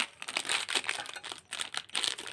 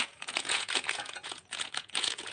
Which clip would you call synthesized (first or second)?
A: second